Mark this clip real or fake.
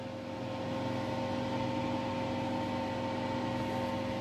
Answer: real